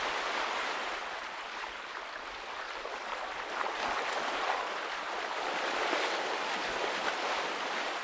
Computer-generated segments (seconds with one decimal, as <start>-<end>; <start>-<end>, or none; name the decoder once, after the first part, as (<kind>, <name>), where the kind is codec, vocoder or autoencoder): none